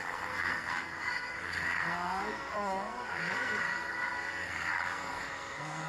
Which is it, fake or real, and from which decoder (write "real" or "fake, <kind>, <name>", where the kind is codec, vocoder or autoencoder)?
fake, codec, SNAC